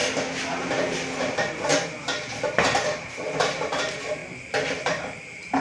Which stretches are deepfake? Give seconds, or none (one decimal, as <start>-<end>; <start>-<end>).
1.2-1.7; 2.4-4.2; 4.8-5.6